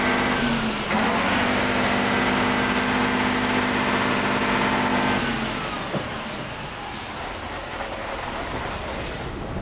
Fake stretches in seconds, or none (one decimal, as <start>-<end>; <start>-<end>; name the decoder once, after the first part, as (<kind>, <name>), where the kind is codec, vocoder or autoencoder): none